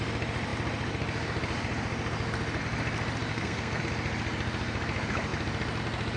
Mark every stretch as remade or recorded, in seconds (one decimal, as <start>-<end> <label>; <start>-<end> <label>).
0.0-3.3 recorded; 3.3-3.8 remade; 3.8-6.2 recorded